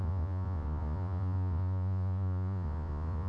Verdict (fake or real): fake